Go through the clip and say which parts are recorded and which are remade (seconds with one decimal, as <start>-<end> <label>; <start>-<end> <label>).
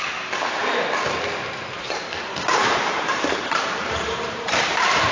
0.0-1.7 recorded; 1.7-5.1 remade